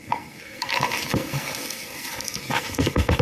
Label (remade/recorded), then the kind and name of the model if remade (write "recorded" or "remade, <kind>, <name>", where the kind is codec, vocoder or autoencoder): remade, codec, SNAC